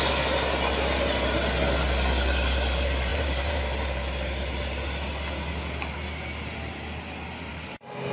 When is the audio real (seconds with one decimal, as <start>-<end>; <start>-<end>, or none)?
0.0-8.1